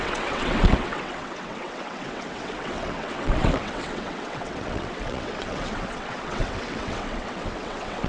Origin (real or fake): fake